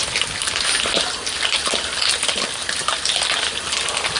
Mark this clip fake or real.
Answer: real